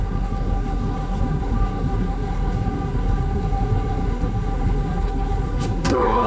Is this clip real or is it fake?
fake